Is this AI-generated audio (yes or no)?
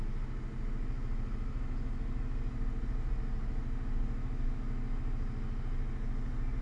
no